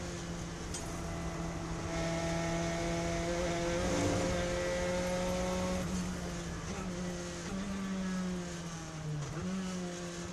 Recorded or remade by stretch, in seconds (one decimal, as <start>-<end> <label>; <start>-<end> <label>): 0.0-10.3 recorded